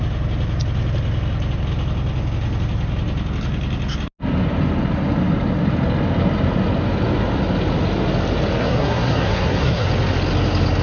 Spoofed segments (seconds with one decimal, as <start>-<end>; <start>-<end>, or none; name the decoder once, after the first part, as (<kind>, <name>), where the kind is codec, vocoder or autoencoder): 8.6-9.9 (codec, SNAC)